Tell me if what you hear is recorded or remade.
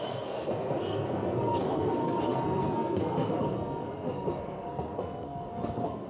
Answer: remade